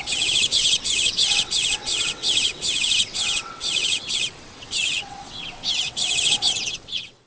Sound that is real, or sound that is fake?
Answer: fake